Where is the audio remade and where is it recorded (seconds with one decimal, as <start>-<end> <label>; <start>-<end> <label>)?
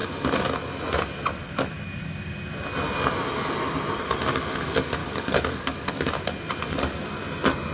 0.0-5.0 recorded; 5.0-5.9 remade; 5.9-7.7 recorded